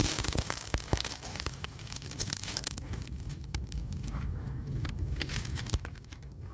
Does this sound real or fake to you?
fake